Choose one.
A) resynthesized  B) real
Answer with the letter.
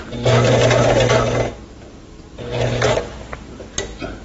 B